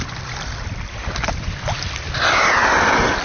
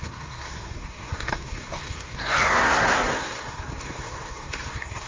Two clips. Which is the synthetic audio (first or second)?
second